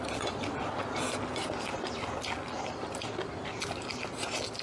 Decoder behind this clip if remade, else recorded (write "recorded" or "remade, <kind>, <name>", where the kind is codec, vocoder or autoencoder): recorded